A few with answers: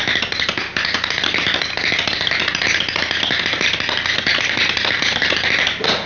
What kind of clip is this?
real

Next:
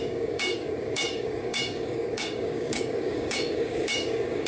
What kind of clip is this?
fake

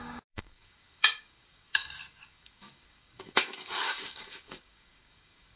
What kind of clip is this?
fake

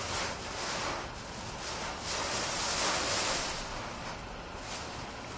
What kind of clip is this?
real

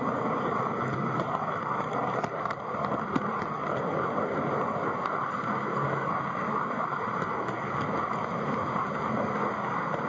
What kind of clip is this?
real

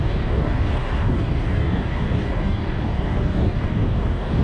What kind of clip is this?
fake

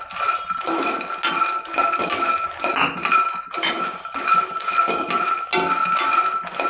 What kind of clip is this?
real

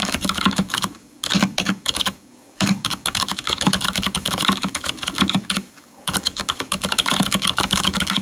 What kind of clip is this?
fake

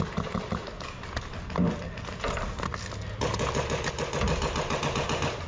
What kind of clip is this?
real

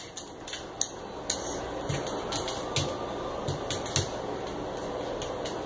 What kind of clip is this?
real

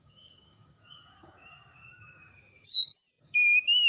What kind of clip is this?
fake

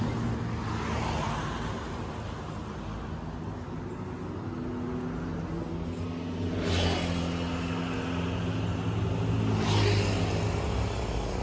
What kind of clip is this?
real